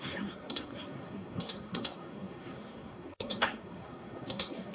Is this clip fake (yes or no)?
yes